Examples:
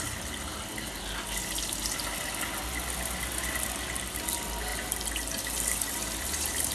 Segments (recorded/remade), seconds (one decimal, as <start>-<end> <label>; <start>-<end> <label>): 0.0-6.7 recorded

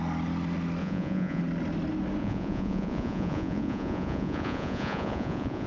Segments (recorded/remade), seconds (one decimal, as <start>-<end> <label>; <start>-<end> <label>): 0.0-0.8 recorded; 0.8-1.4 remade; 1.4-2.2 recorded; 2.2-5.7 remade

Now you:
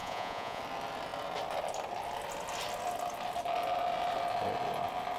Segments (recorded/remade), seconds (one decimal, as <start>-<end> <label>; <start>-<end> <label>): 0.0-0.6 remade; 0.6-5.2 recorded